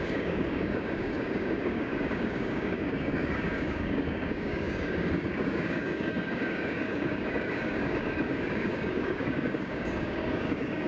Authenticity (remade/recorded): remade